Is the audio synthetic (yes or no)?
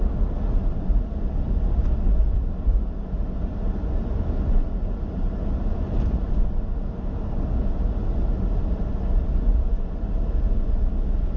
no